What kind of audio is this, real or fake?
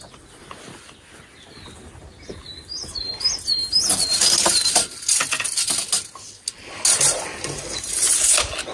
real